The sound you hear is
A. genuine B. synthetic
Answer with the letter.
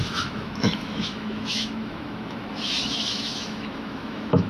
B